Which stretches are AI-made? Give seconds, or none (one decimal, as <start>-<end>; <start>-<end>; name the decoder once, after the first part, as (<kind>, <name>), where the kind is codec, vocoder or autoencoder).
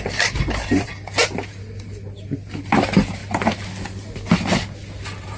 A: none